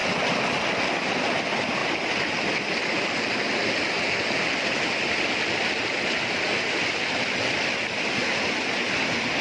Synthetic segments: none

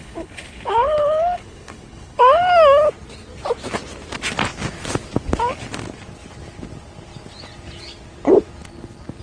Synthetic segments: 0.0-2.4 (codec, HILCodec)

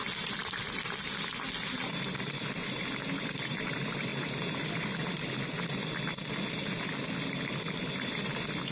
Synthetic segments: none

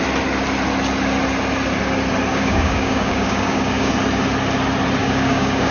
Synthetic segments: 2.3-3.9 (codec, DAC); 5.0-5.7